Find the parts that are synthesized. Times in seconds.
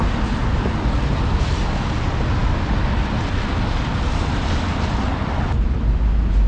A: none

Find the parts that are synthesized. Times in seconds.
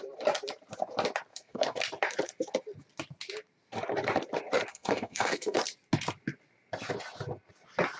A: 1.3-1.8 (codec, SNAC); 4.7-5.6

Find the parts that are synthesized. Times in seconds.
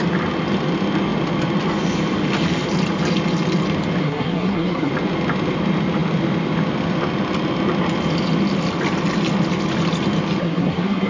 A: 4.0-4.9 (codec, SNAC); 10.4-11.1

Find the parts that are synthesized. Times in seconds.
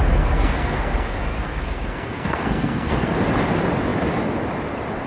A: 0.0-3.1 (codec, SNAC)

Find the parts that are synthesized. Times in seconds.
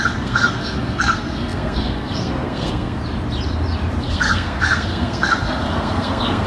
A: 0.0-3.0 (codec, SNAC); 4.0-6.5